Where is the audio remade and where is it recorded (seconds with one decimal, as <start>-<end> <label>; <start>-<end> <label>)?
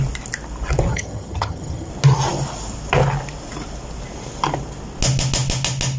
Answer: 0.0-0.9 recorded; 0.9-1.9 remade; 1.9-6.0 recorded